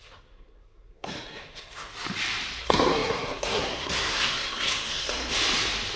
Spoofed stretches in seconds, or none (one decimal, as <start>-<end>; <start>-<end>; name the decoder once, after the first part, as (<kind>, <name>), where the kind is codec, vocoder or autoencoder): 0.0-1.9 (codec, SNAC); 2.6-5.3

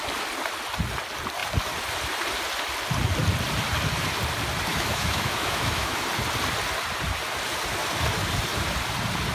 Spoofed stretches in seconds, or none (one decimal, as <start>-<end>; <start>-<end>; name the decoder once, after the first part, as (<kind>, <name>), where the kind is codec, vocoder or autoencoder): 4.7-6.0 (autoencoder, DAC-VAE)

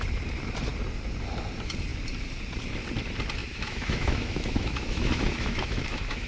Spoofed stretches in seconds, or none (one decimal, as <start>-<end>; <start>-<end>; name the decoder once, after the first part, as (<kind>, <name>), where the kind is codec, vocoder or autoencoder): 3.4-6.3 (autoencoder, DAC-VAE)

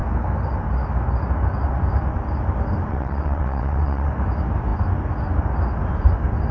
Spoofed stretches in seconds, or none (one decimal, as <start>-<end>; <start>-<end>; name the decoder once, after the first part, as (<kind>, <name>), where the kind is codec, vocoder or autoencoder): 2.9-4.1 (vocoder, WaveNeXt)

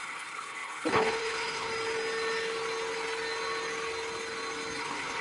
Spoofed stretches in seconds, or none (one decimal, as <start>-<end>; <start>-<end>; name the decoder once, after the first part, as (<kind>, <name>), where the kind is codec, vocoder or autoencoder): 0.0-1.7 (codec, HILCodec); 4.8-5.2

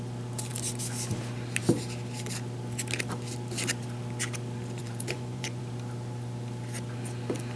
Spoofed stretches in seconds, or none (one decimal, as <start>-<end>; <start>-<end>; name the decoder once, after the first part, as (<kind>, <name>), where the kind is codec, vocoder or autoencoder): 4.8-5.6 (vocoder, Vocos)

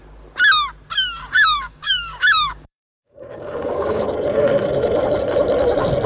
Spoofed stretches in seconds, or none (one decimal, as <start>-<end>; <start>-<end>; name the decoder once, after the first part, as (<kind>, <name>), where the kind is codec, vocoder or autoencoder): 1.2-4.0 (codec, DAC)

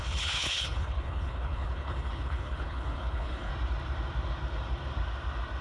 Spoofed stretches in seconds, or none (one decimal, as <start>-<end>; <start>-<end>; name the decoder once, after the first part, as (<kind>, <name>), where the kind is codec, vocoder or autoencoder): 0.0-3.5 (codec, HILCodec)